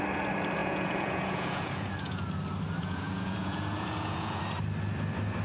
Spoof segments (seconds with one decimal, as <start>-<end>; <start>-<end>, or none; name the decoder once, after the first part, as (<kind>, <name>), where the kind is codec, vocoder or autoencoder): 0.6-2.2 (vocoder, Vocos); 2.8-4.4